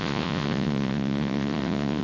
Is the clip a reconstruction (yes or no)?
yes